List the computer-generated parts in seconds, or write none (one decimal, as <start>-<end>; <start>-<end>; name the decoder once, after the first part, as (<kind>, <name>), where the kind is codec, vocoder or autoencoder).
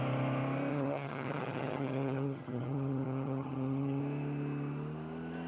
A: 0.7-4.0 (vocoder, HiFi-GAN)